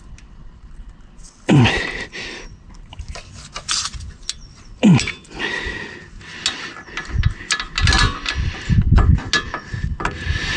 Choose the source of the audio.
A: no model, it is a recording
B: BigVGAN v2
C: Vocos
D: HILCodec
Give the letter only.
A